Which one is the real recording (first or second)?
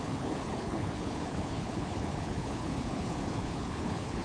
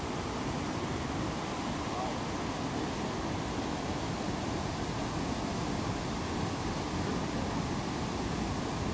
second